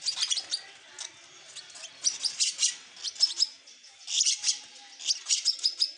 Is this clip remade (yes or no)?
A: no